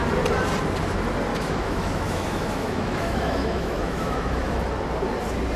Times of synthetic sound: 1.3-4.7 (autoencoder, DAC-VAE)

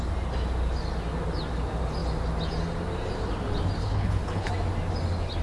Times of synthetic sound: 3.8-4.5 (codec, HILCodec)

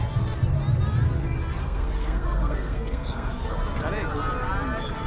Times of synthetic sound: 1.6-3.5 (codec, SNAC)

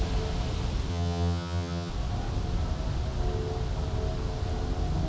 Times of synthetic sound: 0.9-1.9 (vocoder, HiFi-GAN)